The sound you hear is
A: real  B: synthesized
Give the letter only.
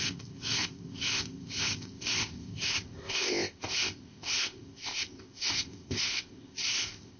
B